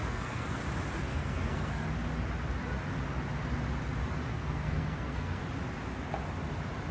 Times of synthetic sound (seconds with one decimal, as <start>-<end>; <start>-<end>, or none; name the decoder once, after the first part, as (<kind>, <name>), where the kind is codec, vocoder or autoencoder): 0.0-0.6 (codec, SNAC); 1.1-1.7; 4.3-5.4